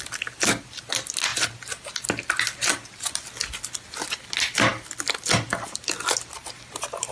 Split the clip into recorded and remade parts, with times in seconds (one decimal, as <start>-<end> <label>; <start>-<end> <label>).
0.0-7.1 recorded